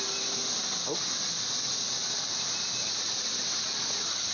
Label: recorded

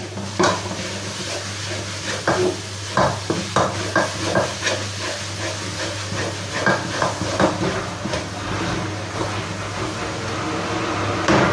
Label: recorded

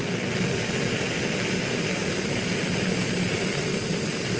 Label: recorded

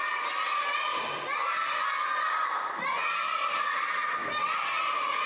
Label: recorded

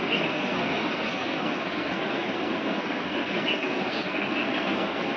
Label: remade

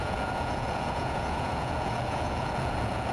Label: remade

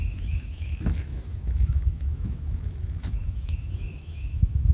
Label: remade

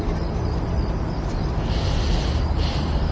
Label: recorded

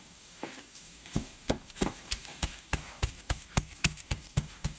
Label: remade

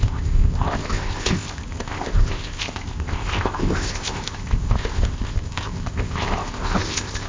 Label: remade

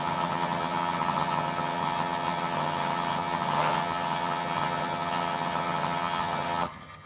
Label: remade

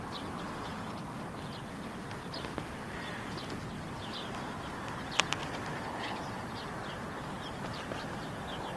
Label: recorded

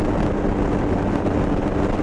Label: recorded